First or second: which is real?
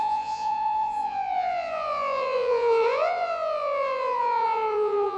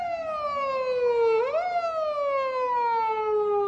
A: second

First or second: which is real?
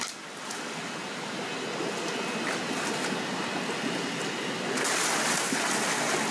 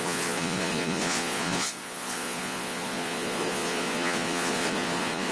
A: first